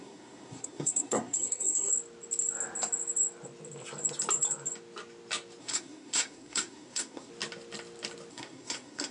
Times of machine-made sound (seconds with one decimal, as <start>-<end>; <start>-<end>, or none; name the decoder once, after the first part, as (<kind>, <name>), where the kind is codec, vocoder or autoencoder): 0.0-1.9 (codec, SNAC); 5.6-7.3; 8.3-9.1